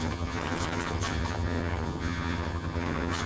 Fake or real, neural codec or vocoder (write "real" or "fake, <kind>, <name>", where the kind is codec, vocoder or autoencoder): fake, vocoder, HiFi-GAN